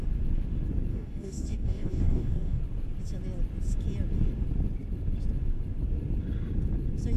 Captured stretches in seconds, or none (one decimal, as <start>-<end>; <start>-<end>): 0.0-0.9; 2.6-7.2